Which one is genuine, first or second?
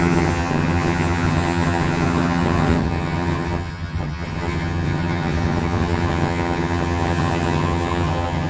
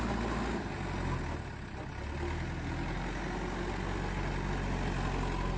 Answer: second